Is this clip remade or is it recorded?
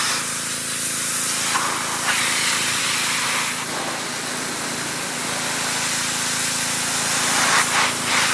recorded